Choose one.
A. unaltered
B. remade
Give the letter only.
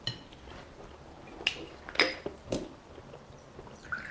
A